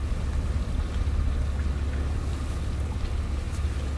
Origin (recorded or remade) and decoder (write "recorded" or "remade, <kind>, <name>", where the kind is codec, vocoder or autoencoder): recorded